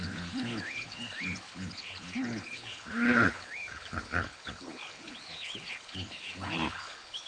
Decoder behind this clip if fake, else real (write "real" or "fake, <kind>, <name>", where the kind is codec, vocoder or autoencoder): fake, codec, HILCodec